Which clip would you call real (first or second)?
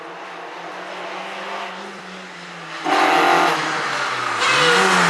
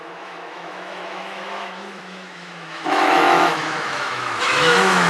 first